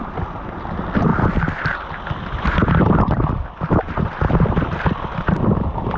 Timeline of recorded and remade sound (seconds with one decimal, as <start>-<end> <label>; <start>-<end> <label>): 0.0-6.0 recorded